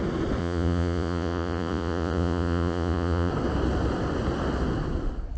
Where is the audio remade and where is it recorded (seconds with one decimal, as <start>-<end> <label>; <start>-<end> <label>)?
0.0-0.4 recorded; 0.4-3.3 remade; 3.3-5.4 recorded

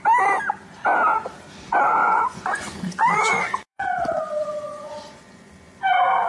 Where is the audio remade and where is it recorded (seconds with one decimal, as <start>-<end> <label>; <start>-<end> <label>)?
0.0-2.0 recorded; 2.0-5.8 remade; 5.8-6.3 recorded

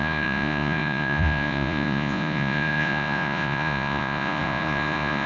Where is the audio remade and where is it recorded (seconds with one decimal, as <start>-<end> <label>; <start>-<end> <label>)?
0.0-5.3 remade

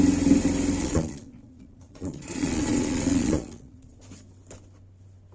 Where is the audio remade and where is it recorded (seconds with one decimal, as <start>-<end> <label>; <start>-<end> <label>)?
0.0-0.8 recorded; 0.8-4.0 remade; 4.0-5.3 recorded

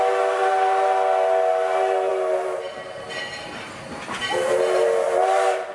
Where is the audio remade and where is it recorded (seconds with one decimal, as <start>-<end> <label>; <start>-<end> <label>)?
0.0-5.7 recorded

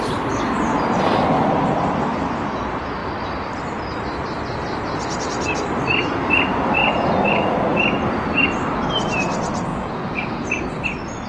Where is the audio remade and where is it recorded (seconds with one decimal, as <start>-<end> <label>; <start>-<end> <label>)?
0.0-9.7 recorded; 9.7-10.6 remade; 10.6-11.3 recorded

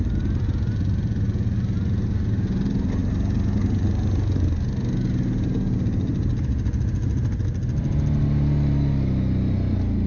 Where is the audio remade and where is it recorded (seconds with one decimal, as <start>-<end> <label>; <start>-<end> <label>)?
0.0-10.1 recorded